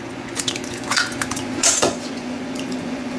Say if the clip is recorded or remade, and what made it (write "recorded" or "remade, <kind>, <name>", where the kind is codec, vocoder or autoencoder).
remade, vocoder, Vocos